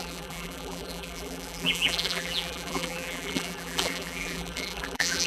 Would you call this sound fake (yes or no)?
yes